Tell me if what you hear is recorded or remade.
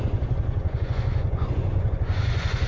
remade